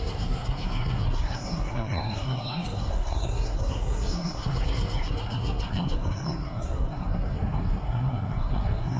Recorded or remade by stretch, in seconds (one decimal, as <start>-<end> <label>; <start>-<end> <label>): 0.0-9.0 remade